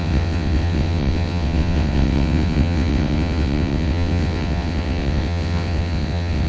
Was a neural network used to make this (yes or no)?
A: yes